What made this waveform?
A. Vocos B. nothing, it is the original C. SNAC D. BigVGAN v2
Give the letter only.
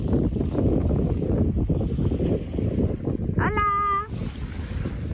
B